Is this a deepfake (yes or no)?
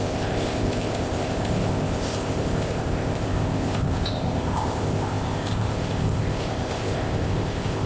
yes